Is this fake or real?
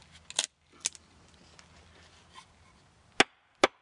real